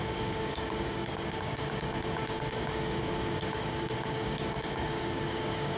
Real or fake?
fake